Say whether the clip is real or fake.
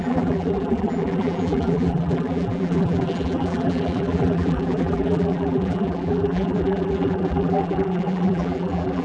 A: fake